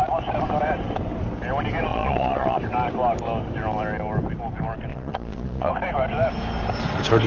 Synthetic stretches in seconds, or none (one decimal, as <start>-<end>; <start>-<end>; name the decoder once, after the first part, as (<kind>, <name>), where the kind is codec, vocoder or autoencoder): 1.9-2.6 (vocoder, Vocos); 4.9-5.7

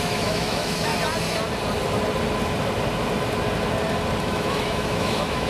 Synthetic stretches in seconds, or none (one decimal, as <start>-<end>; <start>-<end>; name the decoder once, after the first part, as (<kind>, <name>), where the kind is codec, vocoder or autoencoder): 0.0-0.9 (autoencoder, DAC-VAE); 4.2-5.5

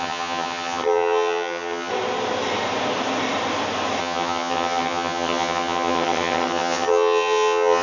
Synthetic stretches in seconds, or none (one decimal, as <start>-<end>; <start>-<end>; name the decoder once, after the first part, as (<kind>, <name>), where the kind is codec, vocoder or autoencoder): 0.0-1.9 (vocoder, HiFi-GAN); 4.0-7.8

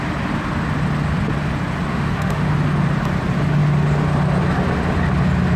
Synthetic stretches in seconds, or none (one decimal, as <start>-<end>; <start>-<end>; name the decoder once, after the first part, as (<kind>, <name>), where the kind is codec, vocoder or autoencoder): 1.9-2.5 (autoencoder, DAC-VAE)

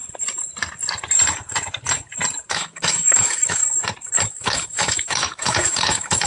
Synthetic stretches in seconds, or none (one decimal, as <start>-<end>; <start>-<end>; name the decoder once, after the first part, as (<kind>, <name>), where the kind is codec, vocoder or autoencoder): 2.5-3.6 (autoencoder, DAC-VAE); 4.3-6.3

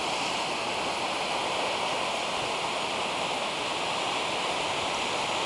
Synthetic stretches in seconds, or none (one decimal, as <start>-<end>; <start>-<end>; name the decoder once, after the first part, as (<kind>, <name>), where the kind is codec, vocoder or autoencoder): none

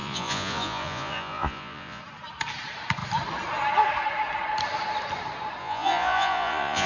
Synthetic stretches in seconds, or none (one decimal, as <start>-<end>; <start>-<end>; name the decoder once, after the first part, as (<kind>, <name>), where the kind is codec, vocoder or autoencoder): 0.0-2.0 (vocoder, Vocos); 5.6-6.9